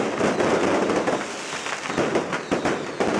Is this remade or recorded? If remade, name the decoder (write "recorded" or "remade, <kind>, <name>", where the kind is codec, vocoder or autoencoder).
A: recorded